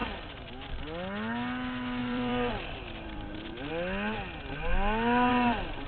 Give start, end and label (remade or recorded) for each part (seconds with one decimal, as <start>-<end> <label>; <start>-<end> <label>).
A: 0.0-2.0 recorded; 2.0-3.7 remade; 3.7-5.9 recorded

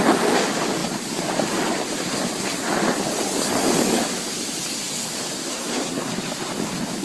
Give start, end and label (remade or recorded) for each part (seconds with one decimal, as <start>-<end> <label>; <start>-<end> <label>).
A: 0.0-5.5 recorded; 5.5-6.1 remade; 6.1-7.0 recorded

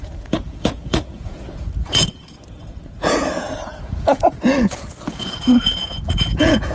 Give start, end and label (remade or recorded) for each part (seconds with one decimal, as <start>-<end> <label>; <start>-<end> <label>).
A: 0.0-6.7 remade

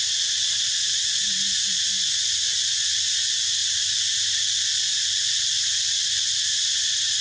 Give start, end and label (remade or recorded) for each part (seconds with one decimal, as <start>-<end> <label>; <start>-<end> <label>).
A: 0.0-0.4 recorded; 0.4-1.2 remade; 1.2-3.6 recorded; 3.6-6.7 remade; 6.7-7.2 recorded

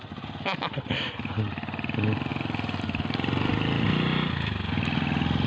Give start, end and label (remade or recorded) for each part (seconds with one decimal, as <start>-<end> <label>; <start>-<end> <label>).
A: 0.0-5.5 recorded